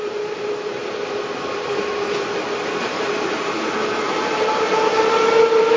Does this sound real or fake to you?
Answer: fake